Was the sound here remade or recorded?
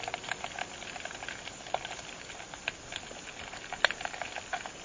recorded